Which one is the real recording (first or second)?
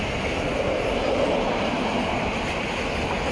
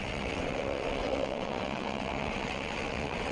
first